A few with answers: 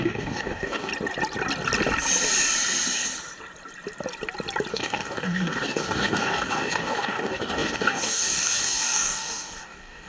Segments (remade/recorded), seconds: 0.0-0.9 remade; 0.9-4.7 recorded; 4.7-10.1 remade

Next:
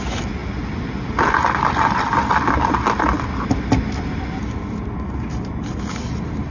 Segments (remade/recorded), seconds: 0.0-6.5 recorded